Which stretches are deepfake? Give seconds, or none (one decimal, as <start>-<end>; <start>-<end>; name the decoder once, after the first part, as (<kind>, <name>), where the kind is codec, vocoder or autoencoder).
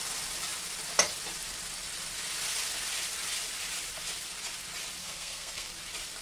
5.0-5.7 (codec, SNAC)